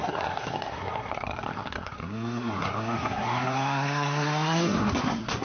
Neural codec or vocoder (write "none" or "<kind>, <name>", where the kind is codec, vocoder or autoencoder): codec, SNAC